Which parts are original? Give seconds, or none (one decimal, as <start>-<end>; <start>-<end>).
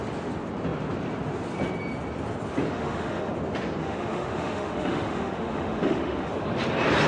0.0-2.7; 3.3-3.8; 6.3-7.1